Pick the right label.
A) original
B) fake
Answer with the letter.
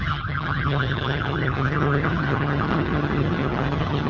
B